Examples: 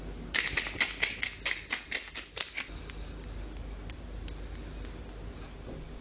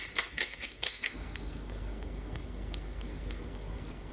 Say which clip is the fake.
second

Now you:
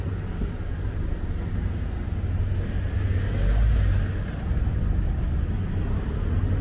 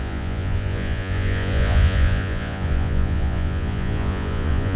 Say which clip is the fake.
second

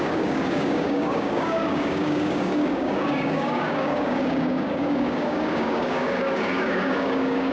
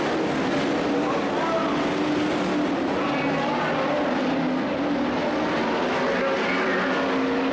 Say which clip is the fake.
first